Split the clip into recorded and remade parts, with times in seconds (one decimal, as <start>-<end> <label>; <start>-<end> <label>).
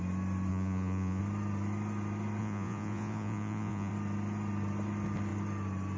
0.0-0.5 recorded; 0.5-1.2 remade; 1.2-2.4 recorded; 2.4-3.9 remade; 3.9-6.0 recorded